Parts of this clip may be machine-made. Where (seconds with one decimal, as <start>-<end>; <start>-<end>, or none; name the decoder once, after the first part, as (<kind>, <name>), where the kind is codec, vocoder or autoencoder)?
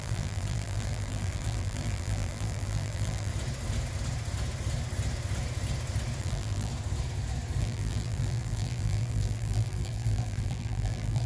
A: 0.0-3.3 (vocoder, BigVGAN v2); 6.2-6.7; 7.6-11.3